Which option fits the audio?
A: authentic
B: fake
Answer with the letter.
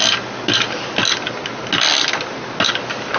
A